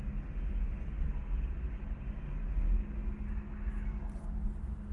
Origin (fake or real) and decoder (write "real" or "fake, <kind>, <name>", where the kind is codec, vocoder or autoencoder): real